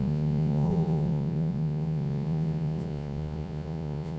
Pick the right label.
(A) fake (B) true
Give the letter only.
A